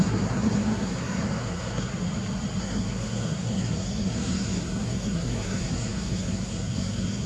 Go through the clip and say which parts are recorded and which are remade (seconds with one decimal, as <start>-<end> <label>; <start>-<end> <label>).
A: 0.0-1.9 remade; 1.9-2.6 recorded; 2.6-7.3 remade